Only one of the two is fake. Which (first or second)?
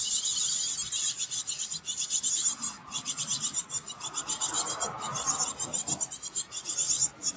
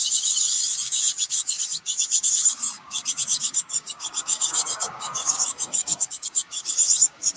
second